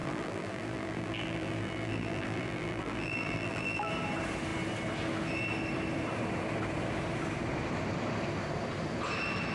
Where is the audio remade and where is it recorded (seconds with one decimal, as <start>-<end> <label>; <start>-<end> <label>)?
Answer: 0.0-3.9 remade; 3.9-9.5 recorded